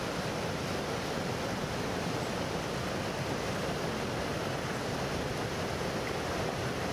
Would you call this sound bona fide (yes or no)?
yes